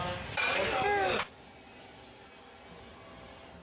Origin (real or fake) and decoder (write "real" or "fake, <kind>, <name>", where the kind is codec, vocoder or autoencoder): real